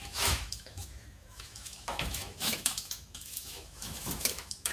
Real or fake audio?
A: fake